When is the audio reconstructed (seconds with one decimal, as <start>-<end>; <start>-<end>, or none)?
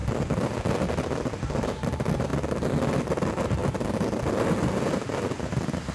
none